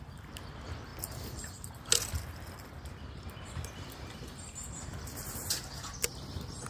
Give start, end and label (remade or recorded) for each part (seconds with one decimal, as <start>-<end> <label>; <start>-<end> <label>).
0.0-6.7 recorded